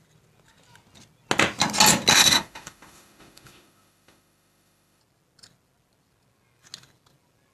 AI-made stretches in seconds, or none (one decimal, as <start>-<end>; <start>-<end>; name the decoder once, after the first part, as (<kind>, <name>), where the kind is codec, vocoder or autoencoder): 2.1-5.0 (autoencoder, DAC-VAE)